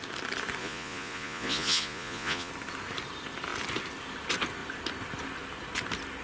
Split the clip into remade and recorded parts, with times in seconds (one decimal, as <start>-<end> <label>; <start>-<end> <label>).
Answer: 0.0-0.6 recorded; 0.6-2.5 remade; 2.5-6.2 recorded